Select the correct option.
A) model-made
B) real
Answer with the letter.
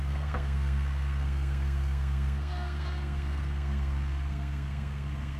A